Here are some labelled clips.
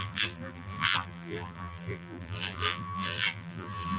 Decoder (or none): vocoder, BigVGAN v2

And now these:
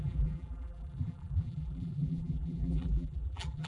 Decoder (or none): vocoder, BigVGAN v2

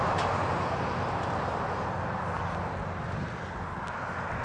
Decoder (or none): none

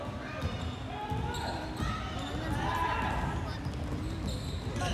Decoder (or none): none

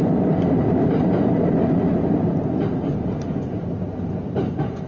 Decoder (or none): vocoder, BigVGAN v2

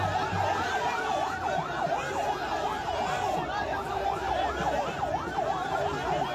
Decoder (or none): none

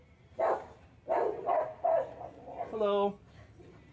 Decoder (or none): none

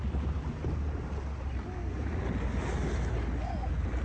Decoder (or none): none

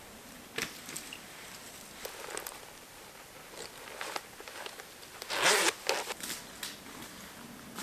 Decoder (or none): none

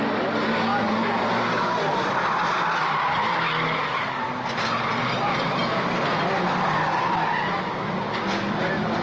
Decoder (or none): none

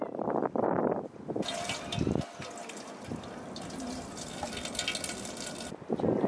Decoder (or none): none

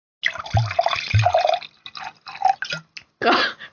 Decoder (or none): none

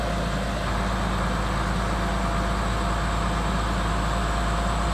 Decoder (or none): none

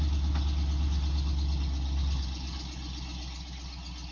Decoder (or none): none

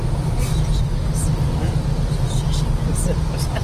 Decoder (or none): none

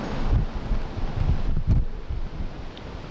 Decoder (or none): none